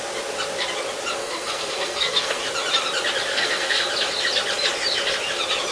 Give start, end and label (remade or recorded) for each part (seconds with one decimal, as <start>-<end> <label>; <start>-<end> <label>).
0.0-1.2 recorded; 1.2-2.4 remade; 2.4-3.3 recorded; 3.3-3.8 remade; 3.8-5.7 recorded